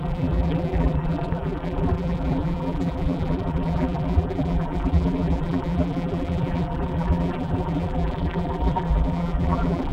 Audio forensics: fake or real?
fake